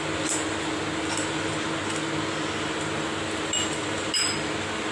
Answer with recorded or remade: recorded